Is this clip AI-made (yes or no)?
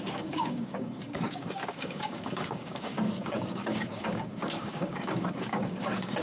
yes